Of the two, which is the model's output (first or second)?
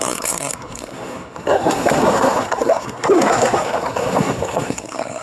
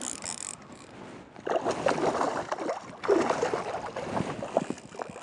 first